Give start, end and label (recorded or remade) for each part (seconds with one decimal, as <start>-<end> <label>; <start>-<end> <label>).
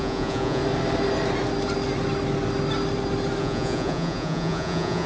0.0-0.6 remade; 0.6-3.4 recorded; 3.4-5.1 remade